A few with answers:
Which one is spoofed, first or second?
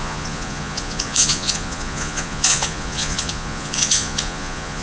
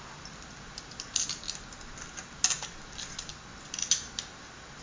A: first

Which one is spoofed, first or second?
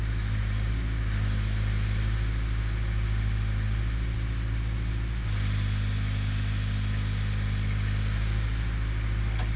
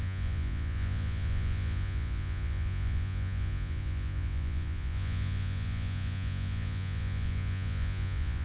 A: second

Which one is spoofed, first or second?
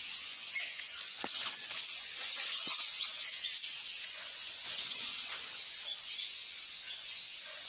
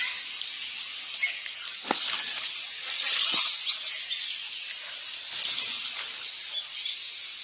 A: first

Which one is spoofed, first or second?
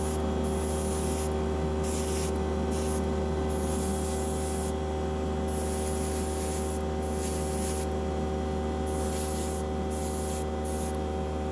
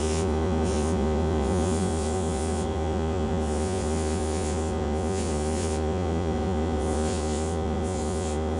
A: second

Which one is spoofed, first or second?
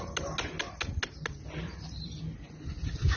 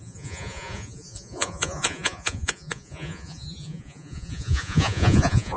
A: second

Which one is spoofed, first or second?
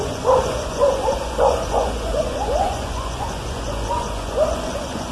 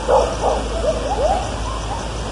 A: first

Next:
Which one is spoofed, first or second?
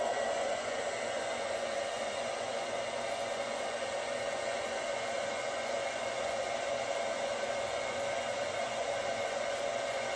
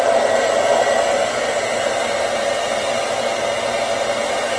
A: first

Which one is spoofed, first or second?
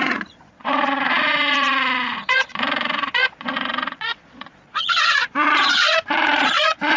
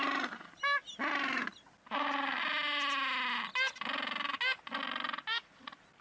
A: first